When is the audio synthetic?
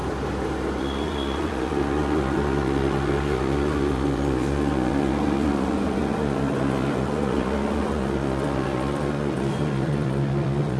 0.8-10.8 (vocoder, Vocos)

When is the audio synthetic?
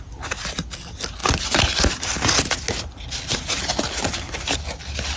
none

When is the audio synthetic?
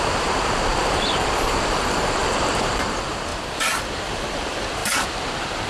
0.0-3.3 (vocoder, BigVGAN v2); 4.0-5.7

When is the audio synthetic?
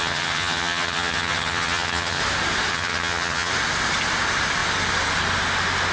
0.0-2.2 (vocoder, HiFi-GAN); 2.7-3.5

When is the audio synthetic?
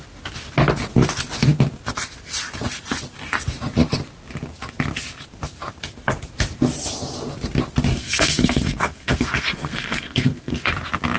7.9-10.7 (codec, SNAC)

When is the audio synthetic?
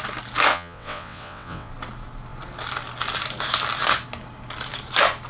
0.5-1.7 (vocoder, WaveNeXt)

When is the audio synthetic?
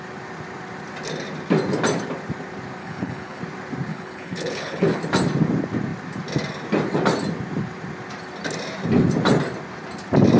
2.8-3.4 (codec, HILCodec); 3.9-5.0